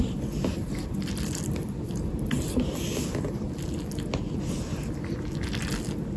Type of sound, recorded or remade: recorded